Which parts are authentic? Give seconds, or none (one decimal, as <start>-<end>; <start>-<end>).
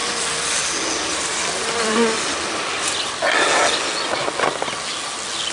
3.3-5.5